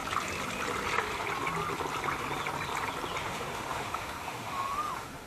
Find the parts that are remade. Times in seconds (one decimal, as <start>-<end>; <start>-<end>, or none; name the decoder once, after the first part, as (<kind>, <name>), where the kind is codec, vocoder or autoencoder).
3.2-5.3 (autoencoder, DAC-VAE)